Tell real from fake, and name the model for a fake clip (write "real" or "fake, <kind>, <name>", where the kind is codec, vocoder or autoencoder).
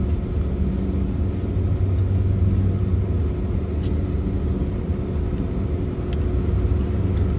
real